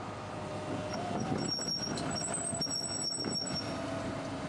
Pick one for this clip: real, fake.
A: real